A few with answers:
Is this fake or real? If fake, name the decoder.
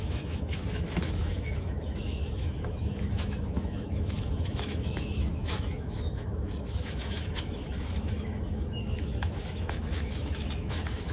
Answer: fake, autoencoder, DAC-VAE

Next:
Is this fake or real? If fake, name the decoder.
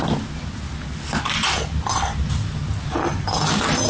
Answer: real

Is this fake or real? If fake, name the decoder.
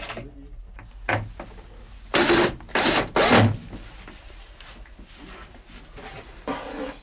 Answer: real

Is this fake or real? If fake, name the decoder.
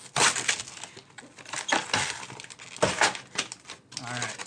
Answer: real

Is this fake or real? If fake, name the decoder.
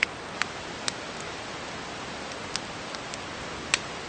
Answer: real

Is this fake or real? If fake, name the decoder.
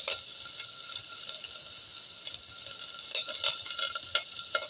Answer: real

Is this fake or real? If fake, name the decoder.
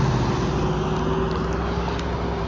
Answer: real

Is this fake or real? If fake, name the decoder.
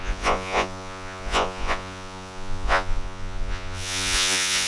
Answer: fake, vocoder, Vocos